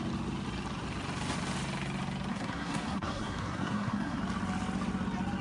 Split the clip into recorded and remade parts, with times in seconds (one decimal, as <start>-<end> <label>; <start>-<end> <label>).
0.0-2.3 recorded; 2.3-4.2 remade; 4.2-5.4 recorded